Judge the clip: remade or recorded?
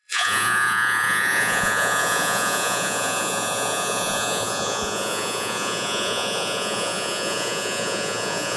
remade